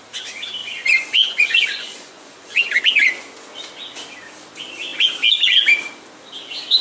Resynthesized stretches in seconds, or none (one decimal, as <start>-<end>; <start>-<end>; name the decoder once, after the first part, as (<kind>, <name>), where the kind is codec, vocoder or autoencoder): 0.6-2.7 (vocoder, Vocos)